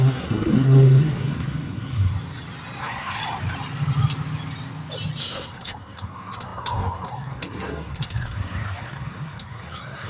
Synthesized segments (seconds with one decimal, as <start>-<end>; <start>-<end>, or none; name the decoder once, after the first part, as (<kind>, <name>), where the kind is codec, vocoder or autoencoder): 0.0-2.1 (codec, SNAC); 2.8-3.2; 5.2-10.1